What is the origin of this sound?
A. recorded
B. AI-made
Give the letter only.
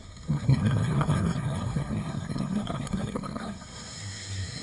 B